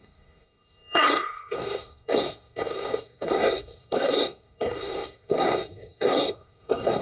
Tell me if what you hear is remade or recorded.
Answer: remade